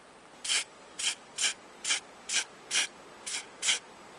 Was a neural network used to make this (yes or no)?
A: no